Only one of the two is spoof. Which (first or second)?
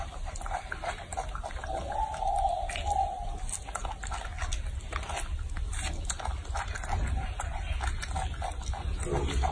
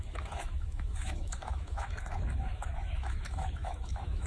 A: second